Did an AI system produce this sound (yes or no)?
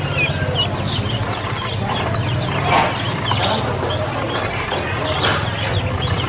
no